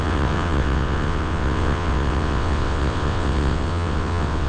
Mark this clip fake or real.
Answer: fake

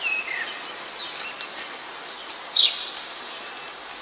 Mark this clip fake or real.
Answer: real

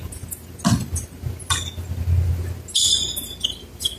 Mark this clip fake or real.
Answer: real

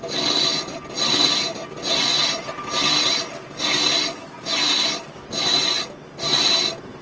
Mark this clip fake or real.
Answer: real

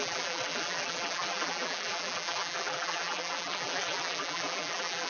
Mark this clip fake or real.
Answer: fake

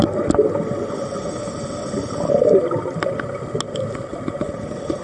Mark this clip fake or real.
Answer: real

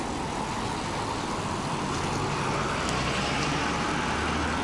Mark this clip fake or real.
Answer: real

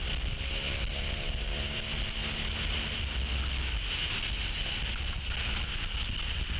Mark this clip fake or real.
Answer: real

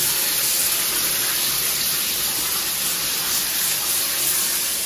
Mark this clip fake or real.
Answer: real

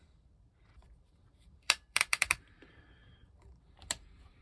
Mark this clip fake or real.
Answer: fake